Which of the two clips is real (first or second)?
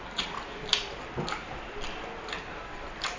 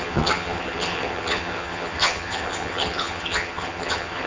first